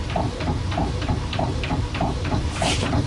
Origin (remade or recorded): remade